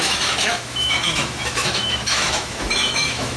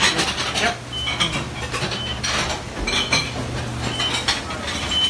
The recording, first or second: second